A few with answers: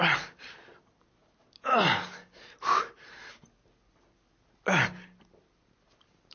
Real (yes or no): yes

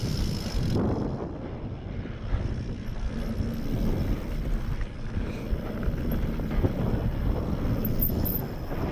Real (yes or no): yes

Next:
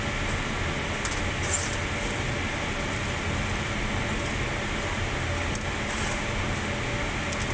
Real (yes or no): yes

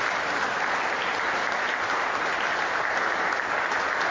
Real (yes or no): yes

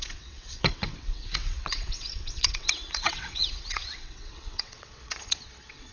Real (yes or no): no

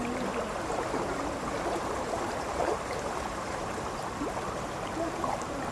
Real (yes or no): no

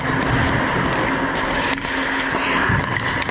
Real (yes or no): yes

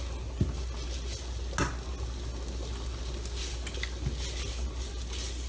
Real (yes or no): yes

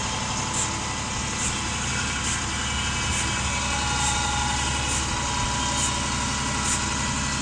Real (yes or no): yes